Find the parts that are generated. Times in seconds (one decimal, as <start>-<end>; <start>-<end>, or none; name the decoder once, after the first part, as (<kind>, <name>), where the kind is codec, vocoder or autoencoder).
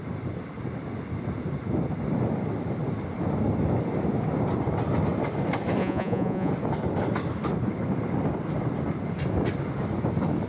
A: 5.8-6.5 (vocoder, Vocos)